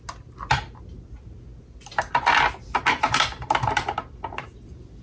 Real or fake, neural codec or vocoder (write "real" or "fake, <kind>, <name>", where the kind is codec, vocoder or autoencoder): real